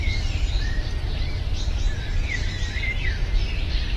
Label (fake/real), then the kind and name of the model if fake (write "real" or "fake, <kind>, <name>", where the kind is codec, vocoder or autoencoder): real